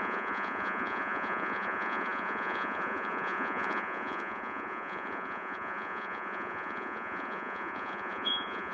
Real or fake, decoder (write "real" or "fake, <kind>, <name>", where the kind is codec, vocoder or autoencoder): fake, vocoder, Vocos